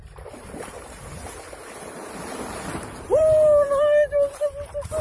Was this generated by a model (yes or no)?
yes